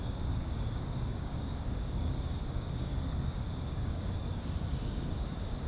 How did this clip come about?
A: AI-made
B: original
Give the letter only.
A